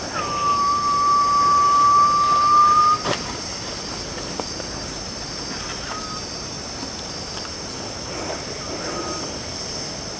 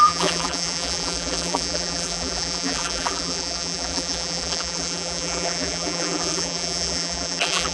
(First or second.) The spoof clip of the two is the second